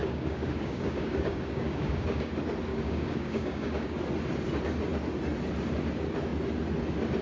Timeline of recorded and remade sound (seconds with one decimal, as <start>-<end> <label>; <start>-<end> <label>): 0.0-2.3 remade; 2.3-2.7 recorded; 2.7-4.0 remade; 4.0-7.2 recorded